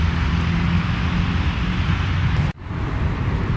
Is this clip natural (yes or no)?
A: yes